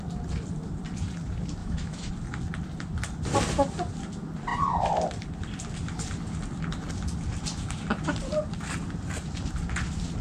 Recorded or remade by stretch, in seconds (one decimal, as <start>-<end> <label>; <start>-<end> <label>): 0.0-1.6 recorded; 1.6-2.1 remade; 2.1-10.2 recorded